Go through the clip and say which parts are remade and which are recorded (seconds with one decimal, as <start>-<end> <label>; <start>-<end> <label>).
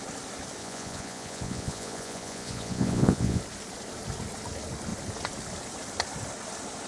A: 0.0-0.6 recorded; 0.6-3.4 remade; 3.4-6.9 recorded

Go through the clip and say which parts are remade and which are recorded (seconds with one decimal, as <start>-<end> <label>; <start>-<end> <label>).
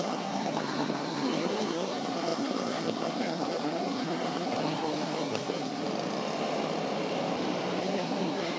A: 0.0-5.8 remade; 5.8-7.8 recorded; 7.8-8.6 remade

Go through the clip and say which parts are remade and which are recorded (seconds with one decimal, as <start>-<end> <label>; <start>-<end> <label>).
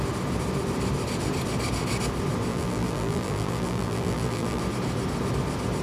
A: 0.0-2.5 recorded; 2.5-4.6 remade; 4.6-5.8 recorded